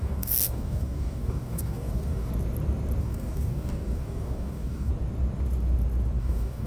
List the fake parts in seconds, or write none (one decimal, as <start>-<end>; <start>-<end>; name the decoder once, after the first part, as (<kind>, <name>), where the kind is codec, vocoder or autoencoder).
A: 0.0-2.3 (codec, DAC); 3.0-4.9; 6.2-6.7